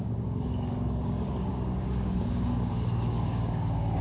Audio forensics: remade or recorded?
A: remade